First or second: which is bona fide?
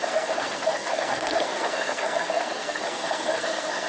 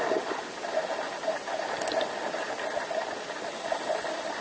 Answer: second